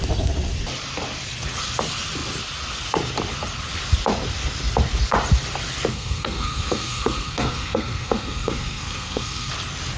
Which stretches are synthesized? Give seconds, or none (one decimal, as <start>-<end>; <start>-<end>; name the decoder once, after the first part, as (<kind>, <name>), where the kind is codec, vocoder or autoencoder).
5.9-9.5 (codec, SNAC)